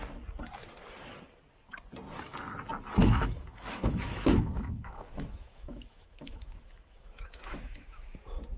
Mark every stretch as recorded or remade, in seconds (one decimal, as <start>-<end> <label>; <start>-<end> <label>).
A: 0.0-3.0 recorded; 3.0-8.2 remade; 8.2-8.6 recorded